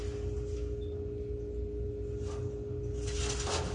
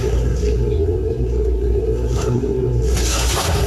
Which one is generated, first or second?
second